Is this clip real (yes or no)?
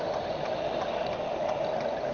yes